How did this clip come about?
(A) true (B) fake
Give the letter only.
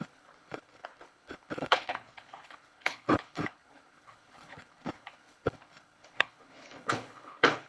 B